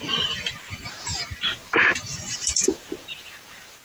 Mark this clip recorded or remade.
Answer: remade